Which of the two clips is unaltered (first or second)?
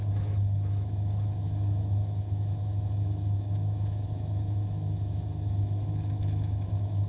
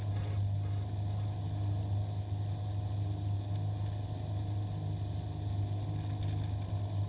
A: second